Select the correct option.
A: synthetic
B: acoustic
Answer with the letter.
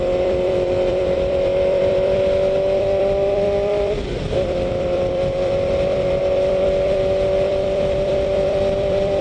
A